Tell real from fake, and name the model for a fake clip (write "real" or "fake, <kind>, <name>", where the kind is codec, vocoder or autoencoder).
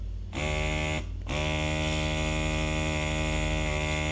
real